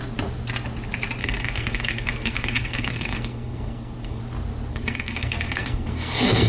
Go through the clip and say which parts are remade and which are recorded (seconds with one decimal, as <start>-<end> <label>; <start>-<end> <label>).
0.0-1.2 recorded; 1.2-4.2 remade; 4.2-4.7 recorded; 4.7-6.5 remade